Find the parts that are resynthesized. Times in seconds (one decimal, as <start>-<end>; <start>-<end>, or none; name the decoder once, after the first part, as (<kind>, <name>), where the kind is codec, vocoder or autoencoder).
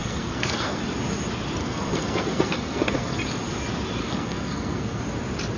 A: 0.0-0.8 (codec, SNAC); 1.6-3.2; 4.0-5.0